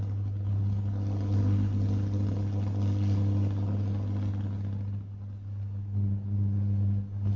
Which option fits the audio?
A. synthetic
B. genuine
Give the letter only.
B